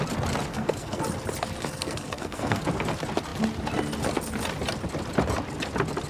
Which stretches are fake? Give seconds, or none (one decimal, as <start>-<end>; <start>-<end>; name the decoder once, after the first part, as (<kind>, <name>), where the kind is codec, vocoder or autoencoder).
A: 0.5-1.0 (codec, SNAC); 1.6-2.6